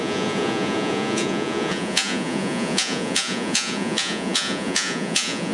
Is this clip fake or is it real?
fake